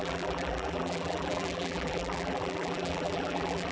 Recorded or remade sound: remade